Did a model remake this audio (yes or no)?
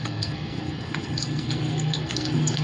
yes